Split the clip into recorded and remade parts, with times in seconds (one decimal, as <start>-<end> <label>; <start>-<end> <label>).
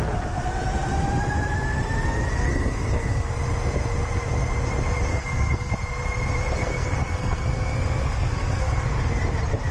0.0-2.4 recorded; 2.4-3.3 remade; 3.3-5.1 recorded; 5.1-5.7 remade; 5.7-6.6 recorded; 6.6-9.0 remade; 9.0-9.7 recorded